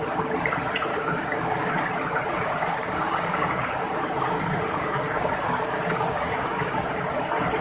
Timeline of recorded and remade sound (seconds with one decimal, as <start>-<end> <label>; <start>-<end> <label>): 0.0-0.9 recorded; 0.9-1.7 remade; 1.7-2.3 recorded; 2.3-6.9 remade; 6.9-7.6 recorded